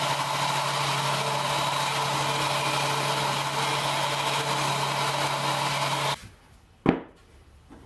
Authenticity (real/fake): real